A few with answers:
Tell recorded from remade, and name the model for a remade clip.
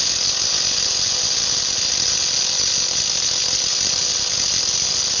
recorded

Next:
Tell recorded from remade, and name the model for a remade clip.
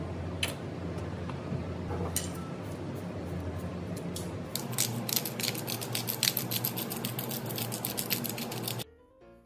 recorded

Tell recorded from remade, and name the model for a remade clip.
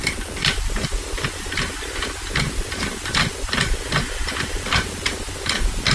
recorded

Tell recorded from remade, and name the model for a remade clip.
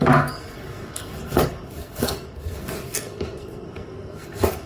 remade, codec, SNAC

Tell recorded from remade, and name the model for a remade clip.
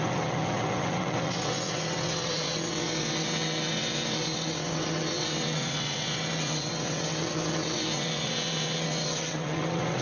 remade, vocoder, WaveNeXt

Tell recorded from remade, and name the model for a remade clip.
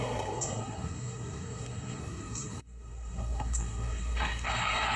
remade, codec, SNAC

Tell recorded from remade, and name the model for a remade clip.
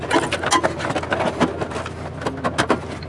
recorded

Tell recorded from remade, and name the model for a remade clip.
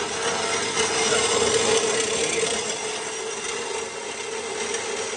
recorded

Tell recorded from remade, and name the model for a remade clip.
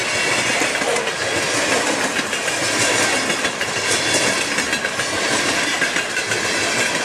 recorded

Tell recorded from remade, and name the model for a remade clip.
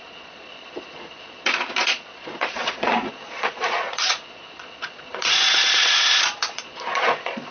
remade, vocoder, Vocos